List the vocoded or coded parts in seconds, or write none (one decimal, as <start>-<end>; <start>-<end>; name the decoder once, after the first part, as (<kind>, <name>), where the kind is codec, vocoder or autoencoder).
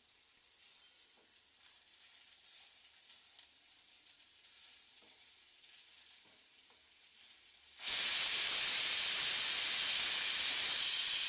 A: 8.1-9.3 (vocoder, BigVGAN v2)